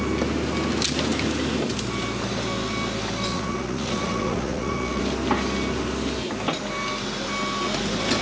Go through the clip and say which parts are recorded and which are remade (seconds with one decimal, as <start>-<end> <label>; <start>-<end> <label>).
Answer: 0.0-3.3 recorded; 3.3-5.0 remade; 5.0-8.2 recorded